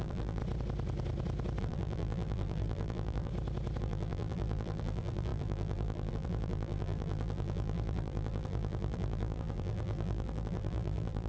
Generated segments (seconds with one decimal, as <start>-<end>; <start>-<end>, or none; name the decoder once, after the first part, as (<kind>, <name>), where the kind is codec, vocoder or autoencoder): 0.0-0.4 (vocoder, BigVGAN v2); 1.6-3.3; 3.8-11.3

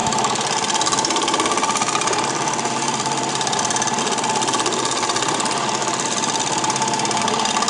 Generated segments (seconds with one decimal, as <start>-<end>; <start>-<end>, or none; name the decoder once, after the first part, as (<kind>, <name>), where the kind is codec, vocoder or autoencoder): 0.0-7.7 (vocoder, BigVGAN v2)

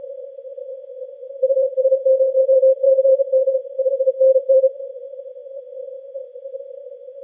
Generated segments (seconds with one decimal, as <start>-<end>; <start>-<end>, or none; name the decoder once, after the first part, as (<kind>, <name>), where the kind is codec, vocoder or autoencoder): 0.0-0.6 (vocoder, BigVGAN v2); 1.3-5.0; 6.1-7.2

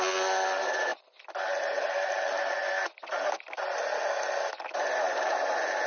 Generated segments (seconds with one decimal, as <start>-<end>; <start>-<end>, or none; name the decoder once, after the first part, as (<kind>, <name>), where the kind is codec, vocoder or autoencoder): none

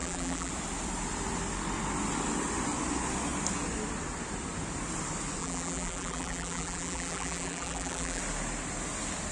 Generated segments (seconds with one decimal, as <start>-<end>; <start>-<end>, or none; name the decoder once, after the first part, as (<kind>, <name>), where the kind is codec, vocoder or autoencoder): 0.0-0.5 (vocoder, BigVGAN v2); 5.4-8.2

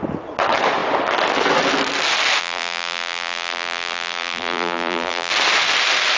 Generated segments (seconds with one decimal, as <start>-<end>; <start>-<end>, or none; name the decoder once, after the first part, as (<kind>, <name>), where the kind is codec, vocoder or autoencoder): 2.4-5.3 (vocoder, BigVGAN v2)